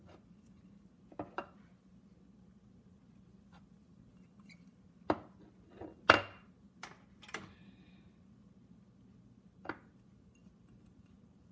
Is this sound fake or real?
real